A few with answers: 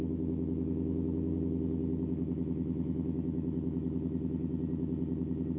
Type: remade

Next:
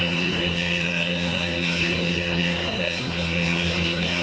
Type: remade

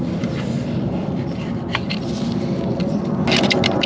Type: recorded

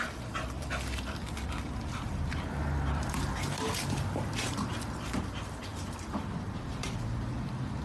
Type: remade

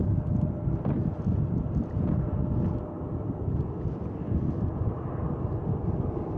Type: recorded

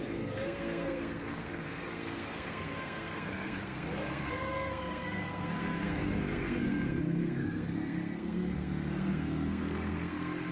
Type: remade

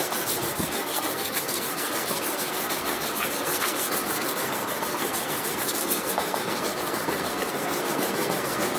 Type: remade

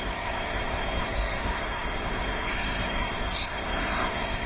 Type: remade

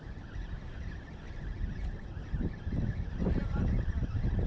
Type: remade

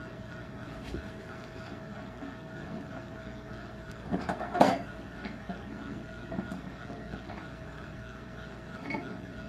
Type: remade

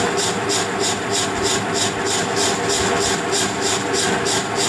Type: remade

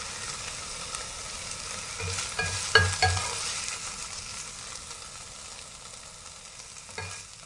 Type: recorded